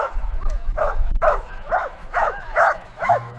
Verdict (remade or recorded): remade